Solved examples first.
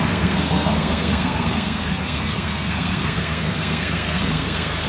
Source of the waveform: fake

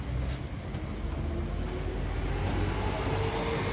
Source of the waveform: real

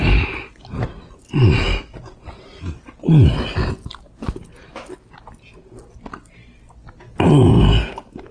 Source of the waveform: real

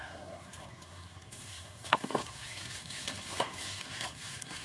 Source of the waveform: fake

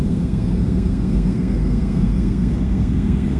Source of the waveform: fake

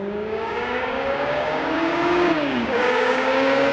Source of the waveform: fake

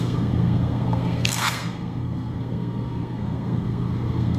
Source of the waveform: fake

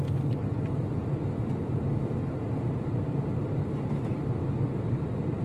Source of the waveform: real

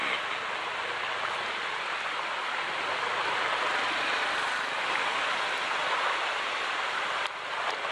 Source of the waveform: real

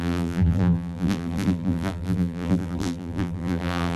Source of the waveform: fake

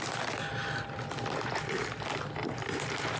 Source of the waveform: real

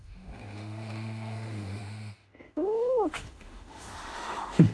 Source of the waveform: fake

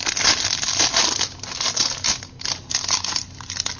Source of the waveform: real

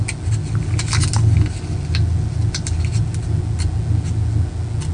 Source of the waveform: real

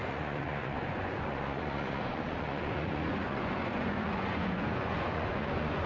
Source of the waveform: fake